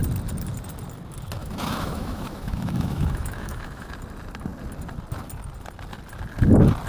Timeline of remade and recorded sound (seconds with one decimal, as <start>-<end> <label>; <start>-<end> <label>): 0.0-1.4 recorded; 1.4-3.9 remade; 3.9-6.9 recorded